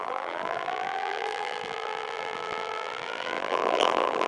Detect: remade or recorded remade